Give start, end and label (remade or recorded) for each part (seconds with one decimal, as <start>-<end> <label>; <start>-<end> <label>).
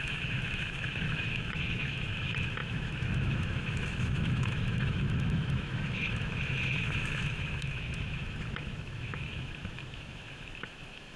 0.0-11.2 remade